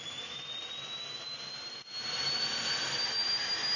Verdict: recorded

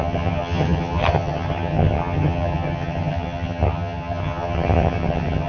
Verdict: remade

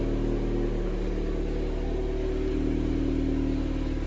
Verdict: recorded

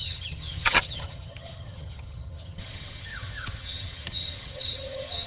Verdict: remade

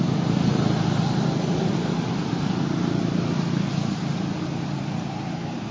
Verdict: recorded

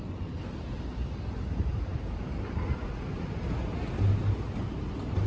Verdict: recorded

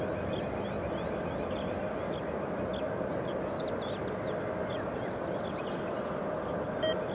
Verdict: recorded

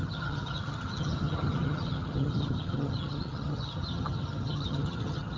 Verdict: remade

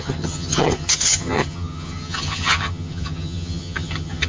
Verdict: remade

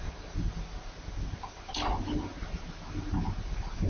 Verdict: recorded